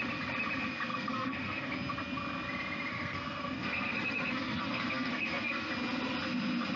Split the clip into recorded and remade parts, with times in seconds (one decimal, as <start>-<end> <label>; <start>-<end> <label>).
0.0-0.9 recorded; 0.9-1.7 remade; 1.7-2.9 recorded; 2.9-5.7 remade; 5.7-6.8 recorded